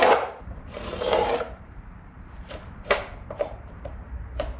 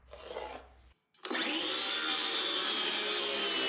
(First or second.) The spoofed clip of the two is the first